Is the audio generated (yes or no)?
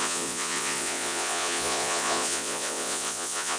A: yes